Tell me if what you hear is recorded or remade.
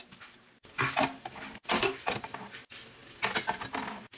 recorded